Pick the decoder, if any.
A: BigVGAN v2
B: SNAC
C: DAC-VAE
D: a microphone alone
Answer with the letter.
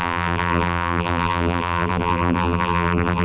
A